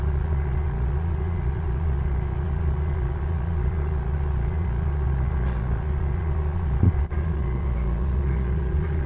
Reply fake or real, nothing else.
fake